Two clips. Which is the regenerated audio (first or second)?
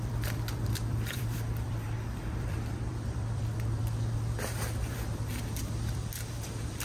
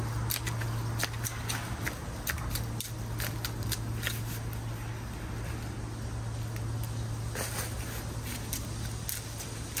first